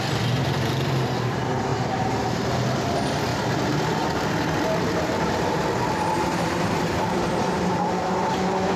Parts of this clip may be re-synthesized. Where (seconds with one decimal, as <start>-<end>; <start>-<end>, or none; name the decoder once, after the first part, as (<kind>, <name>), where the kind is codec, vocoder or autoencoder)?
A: 1.7-2.9 (vocoder, BigVGAN v2); 3.3-7.9